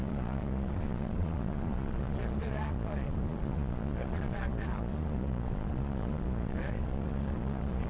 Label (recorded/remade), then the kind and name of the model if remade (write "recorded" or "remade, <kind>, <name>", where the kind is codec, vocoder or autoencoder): remade, vocoder, Vocos